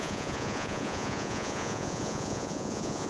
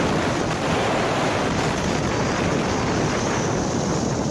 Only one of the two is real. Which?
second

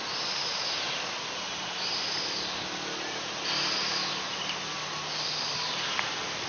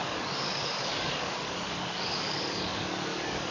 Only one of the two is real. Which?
first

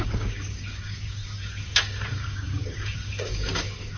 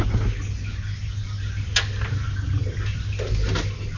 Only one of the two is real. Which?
second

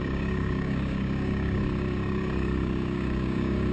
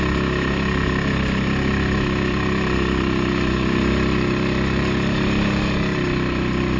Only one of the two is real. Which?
second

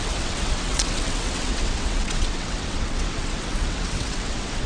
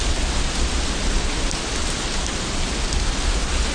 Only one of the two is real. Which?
second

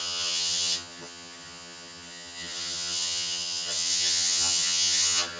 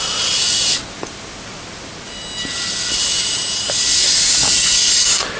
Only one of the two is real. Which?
second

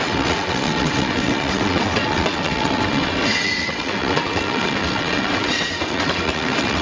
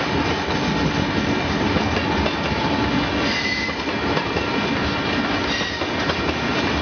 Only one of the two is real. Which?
second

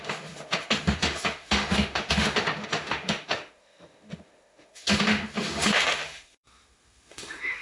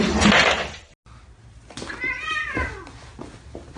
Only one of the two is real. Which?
second